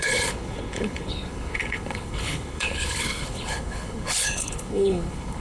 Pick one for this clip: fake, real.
fake